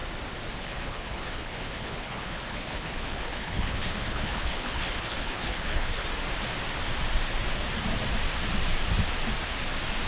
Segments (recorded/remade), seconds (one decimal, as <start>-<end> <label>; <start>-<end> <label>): 0.0-0.6 recorded; 0.6-6.0 remade; 6.0-10.1 recorded